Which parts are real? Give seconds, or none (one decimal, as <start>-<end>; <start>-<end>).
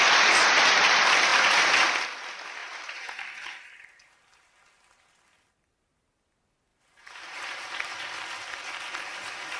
0.0-2.6; 4.0-6.7; 8.2-9.6